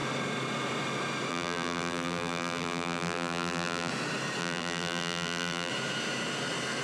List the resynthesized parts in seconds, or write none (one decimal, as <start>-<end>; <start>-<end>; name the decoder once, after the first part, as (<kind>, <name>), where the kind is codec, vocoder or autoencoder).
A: 1.3-3.9 (vocoder, BigVGAN v2); 4.4-5.7